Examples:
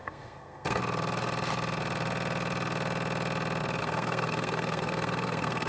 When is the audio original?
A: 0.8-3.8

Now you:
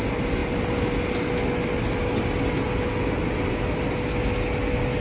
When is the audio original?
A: 0.0-5.0

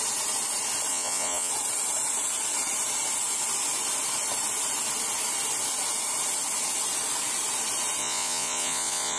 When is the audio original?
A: 0.0-0.9; 1.5-8.0